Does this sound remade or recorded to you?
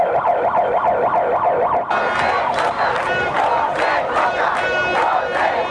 recorded